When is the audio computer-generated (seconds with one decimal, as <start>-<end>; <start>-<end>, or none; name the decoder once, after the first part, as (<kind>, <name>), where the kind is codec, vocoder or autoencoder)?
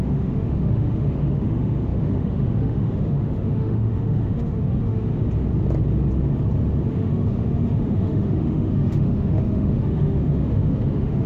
0.0-5.1 (autoencoder, DAC-VAE); 6.9-11.3